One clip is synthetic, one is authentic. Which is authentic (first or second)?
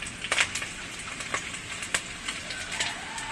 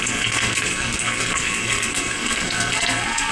first